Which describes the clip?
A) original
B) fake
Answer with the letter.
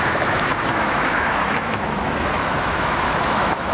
B